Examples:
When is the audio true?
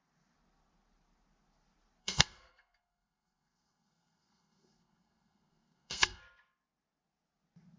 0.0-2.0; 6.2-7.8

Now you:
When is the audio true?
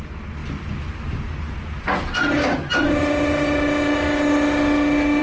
0.0-5.2